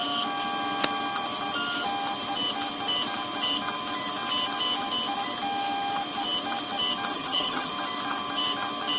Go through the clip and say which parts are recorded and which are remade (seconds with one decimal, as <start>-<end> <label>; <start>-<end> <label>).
0.0-7.1 recorded; 7.1-7.7 remade; 7.7-9.0 recorded